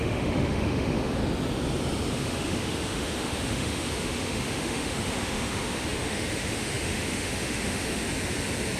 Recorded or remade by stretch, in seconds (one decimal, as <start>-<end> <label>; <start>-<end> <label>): 0.0-1.2 remade; 1.2-2.1 recorded; 2.1-8.0 remade; 8.0-8.8 recorded